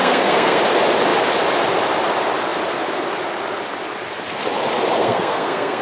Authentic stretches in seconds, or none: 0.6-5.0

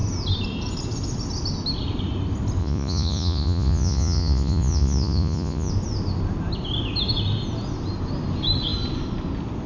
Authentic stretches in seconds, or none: 0.0-2.6; 5.7-9.7

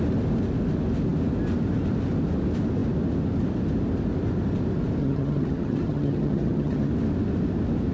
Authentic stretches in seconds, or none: 0.0-5.0; 6.9-7.9

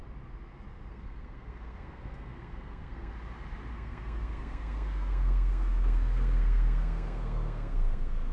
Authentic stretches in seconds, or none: 0.0-0.9; 3.1-3.7

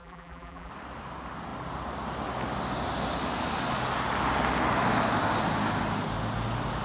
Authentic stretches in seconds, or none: 0.7-6.8

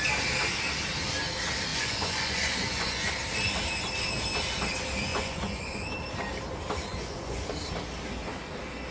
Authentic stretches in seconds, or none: 0.0-1.7; 3.1-5.1; 5.9-6.9; 7.4-8.9

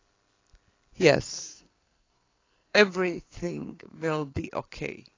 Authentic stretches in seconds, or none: 0.0-1.5; 4.4-5.2

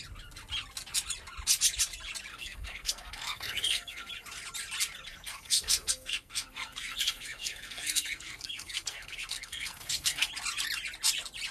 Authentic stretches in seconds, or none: 0.0-2.3; 4.1-5.1; 10.3-11.5